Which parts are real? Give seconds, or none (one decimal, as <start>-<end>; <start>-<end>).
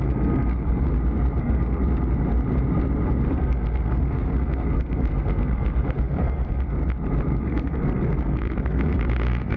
0.9-1.4; 1.8-3.3; 6.8-7.4